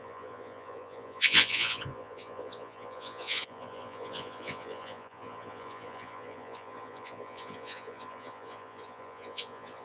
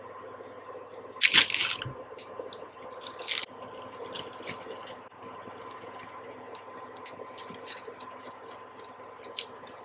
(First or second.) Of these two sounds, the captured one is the second